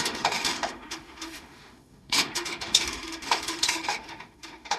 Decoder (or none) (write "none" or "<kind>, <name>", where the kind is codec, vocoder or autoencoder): autoencoder, DAC-VAE